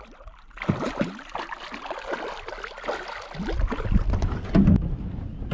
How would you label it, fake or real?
real